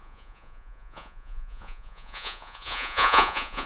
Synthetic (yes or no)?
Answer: yes